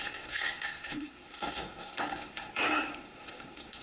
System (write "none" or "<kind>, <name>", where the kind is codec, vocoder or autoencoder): codec, SNAC